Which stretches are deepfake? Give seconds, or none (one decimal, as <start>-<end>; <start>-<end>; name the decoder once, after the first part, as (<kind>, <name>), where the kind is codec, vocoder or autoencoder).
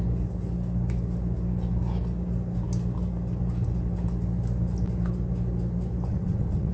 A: 6.1-6.7 (vocoder, WaveNeXt)